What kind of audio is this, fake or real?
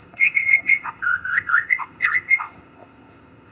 fake